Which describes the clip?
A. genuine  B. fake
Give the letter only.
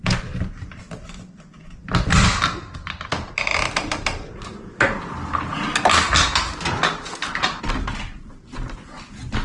A